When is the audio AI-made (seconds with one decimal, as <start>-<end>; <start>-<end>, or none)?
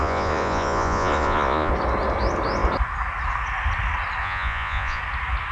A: 0.0-1.7; 4.2-5.0